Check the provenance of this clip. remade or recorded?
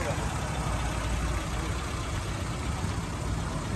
recorded